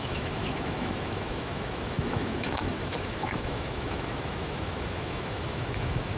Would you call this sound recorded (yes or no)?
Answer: no